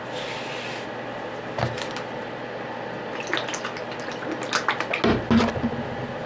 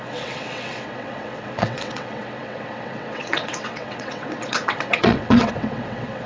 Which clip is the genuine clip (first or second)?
first